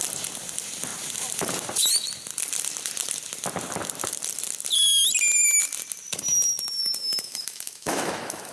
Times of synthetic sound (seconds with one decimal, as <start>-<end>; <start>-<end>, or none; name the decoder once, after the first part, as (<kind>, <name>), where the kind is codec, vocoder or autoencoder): 6.8-8.5 (autoencoder, DAC-VAE)